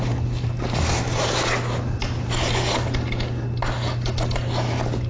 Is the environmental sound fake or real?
real